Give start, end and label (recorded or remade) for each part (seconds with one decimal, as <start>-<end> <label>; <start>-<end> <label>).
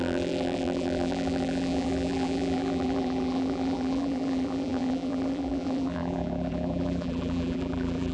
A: 0.0-8.1 remade